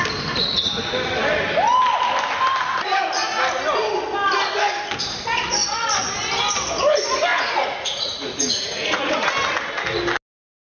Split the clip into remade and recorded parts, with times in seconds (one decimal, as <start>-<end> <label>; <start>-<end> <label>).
0.0-7.3 recorded; 7.3-9.3 remade; 9.3-10.7 recorded

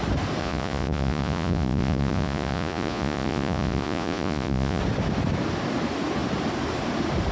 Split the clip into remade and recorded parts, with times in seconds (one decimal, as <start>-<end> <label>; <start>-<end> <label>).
0.0-0.4 recorded; 0.4-4.8 remade; 4.8-7.3 recorded

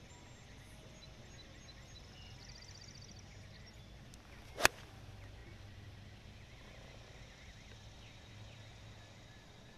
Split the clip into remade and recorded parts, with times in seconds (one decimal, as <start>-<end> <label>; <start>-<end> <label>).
0.0-9.8 recorded

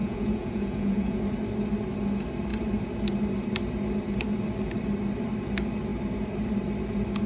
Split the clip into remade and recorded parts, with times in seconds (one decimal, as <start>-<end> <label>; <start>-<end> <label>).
0.0-1.2 remade; 1.2-7.3 recorded

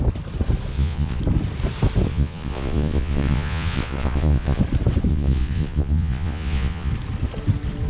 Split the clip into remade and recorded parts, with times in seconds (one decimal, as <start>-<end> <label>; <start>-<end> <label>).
0.0-0.7 recorded; 0.7-1.2 remade; 1.2-2.1 recorded; 2.1-4.6 remade; 4.6-5.1 recorded; 5.1-6.9 remade; 6.9-7.9 recorded

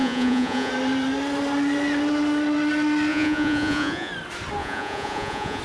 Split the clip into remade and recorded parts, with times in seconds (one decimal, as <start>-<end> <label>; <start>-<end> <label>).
0.0-0.7 remade; 0.7-3.1 recorded; 3.1-4.1 remade; 4.1-4.6 recorded; 4.6-5.6 remade

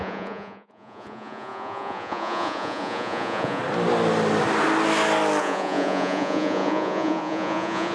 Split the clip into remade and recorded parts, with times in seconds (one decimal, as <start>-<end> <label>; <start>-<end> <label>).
0.0-3.6 remade; 3.6-5.4 recorded; 5.4-7.9 remade